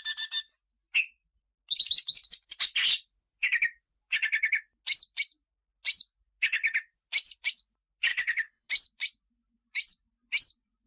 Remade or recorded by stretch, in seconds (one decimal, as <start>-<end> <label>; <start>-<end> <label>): 0.0-8.1 recorded; 8.1-8.7 remade; 8.7-10.9 recorded